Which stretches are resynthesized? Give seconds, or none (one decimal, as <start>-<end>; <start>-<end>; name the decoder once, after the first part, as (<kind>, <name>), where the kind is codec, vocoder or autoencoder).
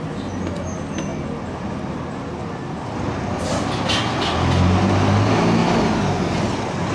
none